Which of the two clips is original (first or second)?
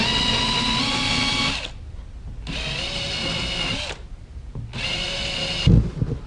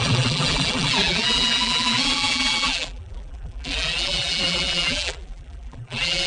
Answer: first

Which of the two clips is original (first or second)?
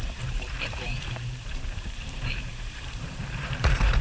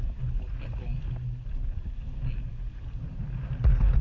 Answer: second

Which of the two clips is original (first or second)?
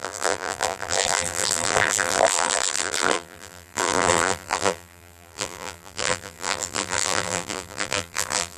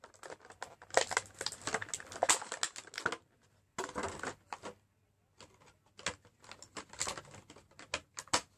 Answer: second